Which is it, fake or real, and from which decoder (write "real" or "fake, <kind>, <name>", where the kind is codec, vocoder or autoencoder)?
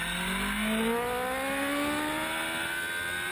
real